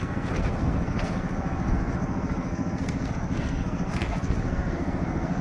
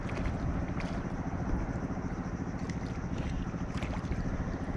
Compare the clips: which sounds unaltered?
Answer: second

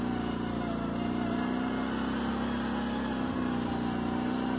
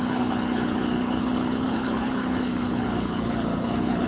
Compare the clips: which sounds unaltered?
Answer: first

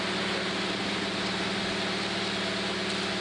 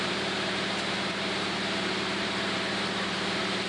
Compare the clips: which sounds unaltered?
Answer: first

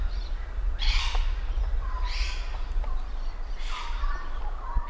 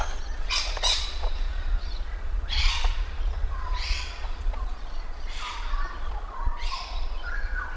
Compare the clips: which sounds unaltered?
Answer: first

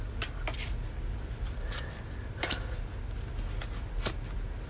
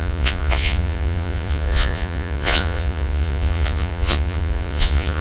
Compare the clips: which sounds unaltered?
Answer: first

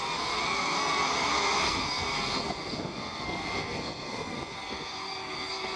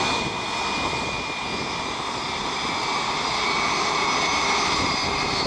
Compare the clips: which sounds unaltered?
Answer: second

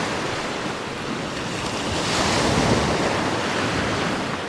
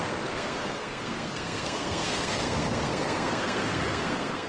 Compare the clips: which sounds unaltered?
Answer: first